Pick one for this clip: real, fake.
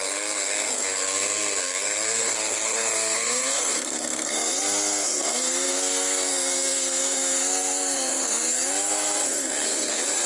fake